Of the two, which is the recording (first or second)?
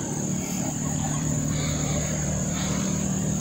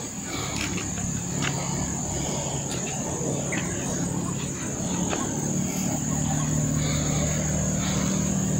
second